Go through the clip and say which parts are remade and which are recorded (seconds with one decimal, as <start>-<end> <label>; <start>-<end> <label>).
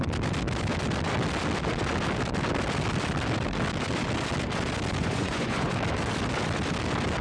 0.0-5.0 recorded; 5.0-5.7 remade; 5.7-7.2 recorded